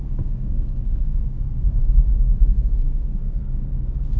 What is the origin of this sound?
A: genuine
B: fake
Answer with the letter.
B